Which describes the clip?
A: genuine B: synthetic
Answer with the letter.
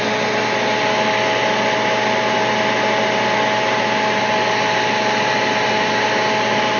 A